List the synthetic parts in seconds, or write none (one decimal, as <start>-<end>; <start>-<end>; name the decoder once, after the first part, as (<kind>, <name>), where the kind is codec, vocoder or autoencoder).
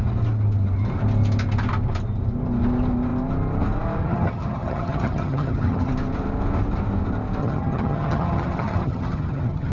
4.0-5.9 (vocoder, HiFi-GAN); 7.4-9.7